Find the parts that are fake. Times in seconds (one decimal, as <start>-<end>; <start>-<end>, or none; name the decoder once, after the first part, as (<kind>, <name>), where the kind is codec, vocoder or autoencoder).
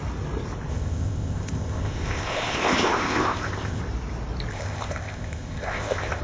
0.7-3.8 (codec, ZipCodec); 4.5-6.2